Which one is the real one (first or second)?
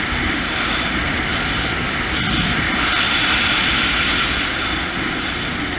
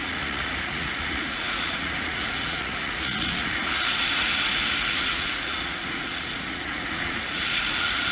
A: first